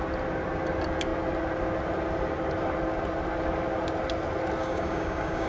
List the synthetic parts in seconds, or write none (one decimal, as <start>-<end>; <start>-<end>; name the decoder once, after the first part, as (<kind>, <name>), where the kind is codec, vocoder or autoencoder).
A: 4.6-5.5 (codec, DAC)